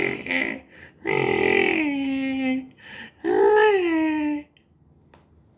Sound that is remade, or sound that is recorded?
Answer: recorded